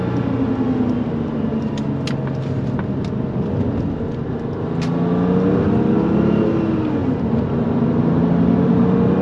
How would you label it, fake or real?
real